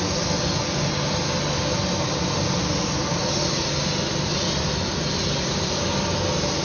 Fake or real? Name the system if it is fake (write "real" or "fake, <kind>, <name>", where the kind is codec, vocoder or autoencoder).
real